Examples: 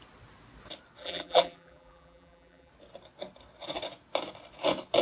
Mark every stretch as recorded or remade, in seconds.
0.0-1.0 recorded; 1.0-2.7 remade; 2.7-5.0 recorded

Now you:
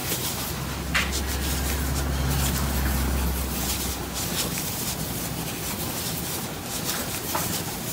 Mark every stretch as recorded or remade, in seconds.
0.0-7.9 recorded

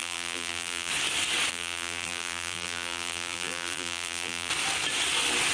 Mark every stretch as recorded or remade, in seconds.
0.0-0.9 remade; 0.9-1.5 recorded; 1.5-4.5 remade; 4.5-5.5 recorded

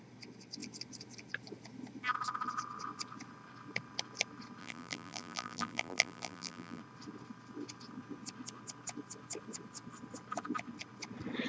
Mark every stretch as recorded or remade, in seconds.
0.0-4.6 recorded; 4.6-6.8 remade; 6.8-11.5 recorded

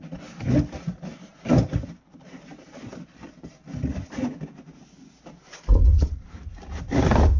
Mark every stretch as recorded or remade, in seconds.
0.0-1.3 recorded; 1.3-2.8 remade; 2.8-7.4 recorded